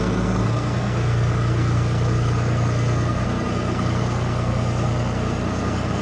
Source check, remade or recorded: remade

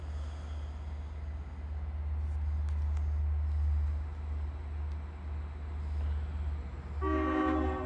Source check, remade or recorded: recorded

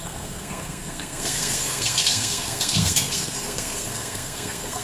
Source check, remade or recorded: remade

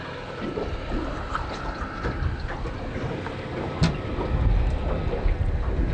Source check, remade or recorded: recorded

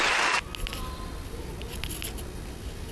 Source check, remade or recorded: recorded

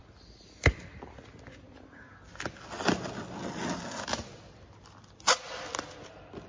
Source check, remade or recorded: recorded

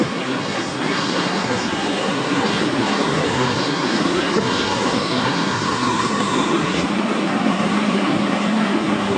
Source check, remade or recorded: remade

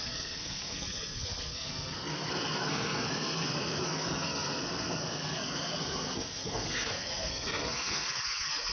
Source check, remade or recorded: remade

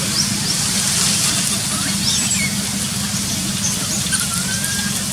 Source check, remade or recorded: recorded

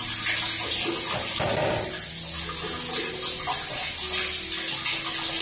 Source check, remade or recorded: recorded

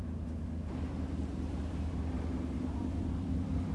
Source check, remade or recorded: recorded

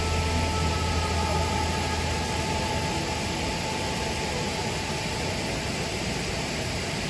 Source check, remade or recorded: recorded